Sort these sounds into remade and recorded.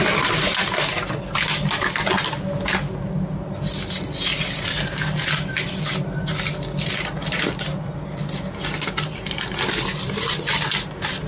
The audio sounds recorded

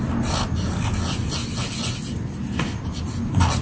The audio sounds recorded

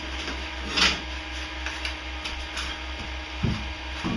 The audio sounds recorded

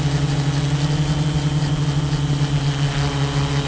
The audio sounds recorded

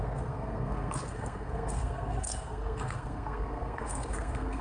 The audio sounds remade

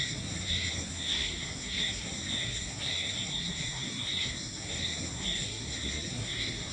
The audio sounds remade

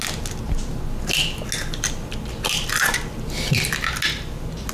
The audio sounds recorded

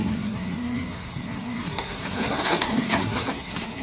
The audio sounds remade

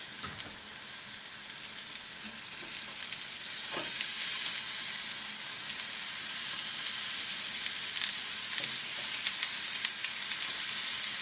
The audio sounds recorded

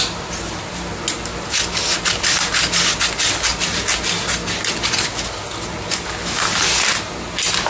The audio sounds recorded